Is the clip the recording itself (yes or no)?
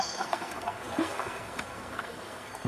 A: no